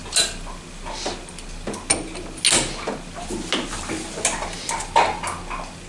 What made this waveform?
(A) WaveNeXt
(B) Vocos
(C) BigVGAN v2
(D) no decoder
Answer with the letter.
D